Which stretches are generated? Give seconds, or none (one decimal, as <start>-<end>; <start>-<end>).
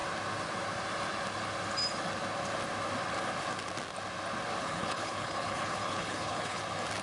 4.6-6.6